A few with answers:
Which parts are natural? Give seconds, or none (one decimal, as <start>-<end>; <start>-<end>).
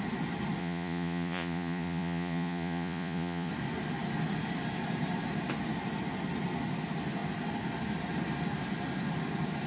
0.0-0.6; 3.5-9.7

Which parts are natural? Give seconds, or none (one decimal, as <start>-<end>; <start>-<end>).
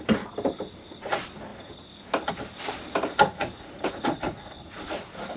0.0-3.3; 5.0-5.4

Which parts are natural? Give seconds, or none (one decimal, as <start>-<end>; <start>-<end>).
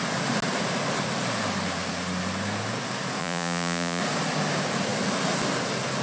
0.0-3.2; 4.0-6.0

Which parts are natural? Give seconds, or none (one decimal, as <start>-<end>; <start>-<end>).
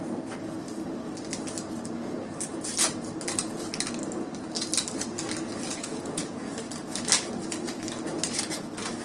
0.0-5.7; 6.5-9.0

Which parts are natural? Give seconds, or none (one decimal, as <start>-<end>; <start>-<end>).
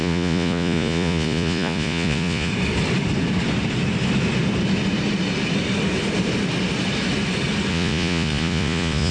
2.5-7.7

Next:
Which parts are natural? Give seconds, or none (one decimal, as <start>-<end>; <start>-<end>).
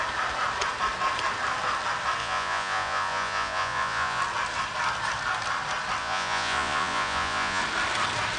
0.0-2.2; 4.2-6.0; 7.6-8.4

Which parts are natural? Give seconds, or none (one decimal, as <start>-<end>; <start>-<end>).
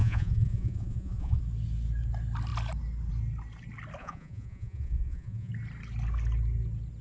1.4-4.0; 5.5-7.0